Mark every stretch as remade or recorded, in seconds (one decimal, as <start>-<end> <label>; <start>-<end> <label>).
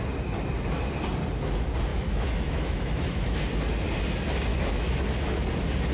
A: 0.0-1.9 recorded; 1.9-3.4 remade; 3.4-4.5 recorded; 4.5-5.4 remade; 5.4-5.9 recorded